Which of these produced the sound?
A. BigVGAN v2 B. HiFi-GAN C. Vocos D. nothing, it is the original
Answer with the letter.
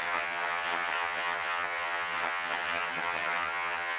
B